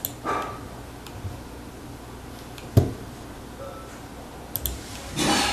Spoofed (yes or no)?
no